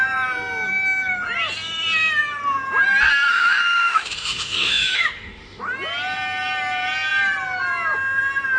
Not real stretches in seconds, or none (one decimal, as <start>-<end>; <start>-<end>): 3.3-5.6